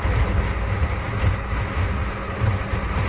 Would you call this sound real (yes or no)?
yes